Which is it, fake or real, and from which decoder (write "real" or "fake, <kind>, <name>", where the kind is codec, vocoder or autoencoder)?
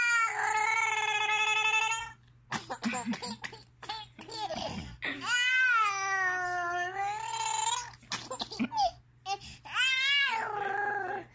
real